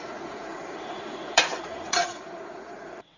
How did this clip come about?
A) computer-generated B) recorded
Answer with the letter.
A